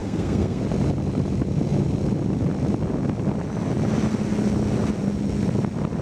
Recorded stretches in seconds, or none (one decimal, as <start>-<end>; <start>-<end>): 0.6-6.0